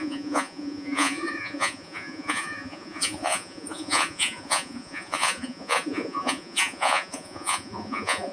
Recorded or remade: remade